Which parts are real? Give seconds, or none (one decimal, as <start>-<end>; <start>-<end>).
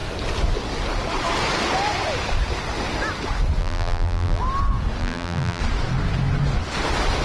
0.0-3.6; 4.4-5.0; 5.6-7.2